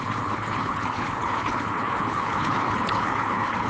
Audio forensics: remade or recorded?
remade